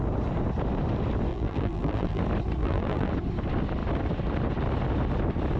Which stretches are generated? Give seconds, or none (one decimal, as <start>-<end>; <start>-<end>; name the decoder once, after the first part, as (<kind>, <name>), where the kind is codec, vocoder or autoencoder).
1.3-2.2 (vocoder, BigVGAN v2); 2.6-3.1